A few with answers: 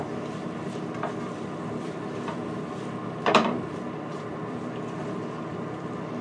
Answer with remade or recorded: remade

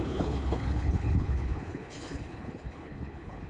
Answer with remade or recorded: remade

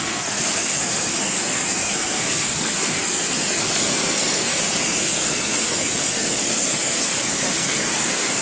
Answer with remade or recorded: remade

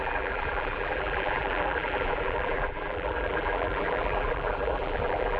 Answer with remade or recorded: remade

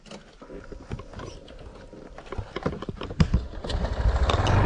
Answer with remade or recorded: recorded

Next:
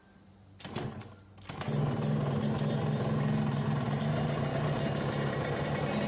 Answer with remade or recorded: recorded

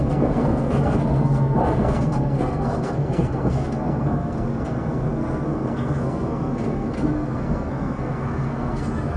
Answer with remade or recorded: remade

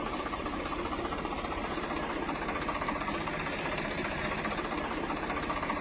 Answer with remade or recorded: remade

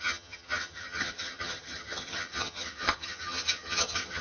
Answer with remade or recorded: remade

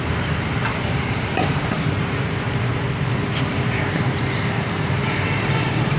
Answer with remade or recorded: remade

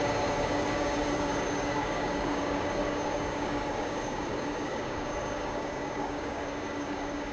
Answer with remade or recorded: remade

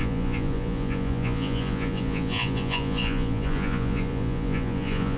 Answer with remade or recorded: remade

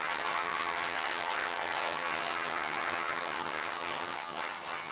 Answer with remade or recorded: remade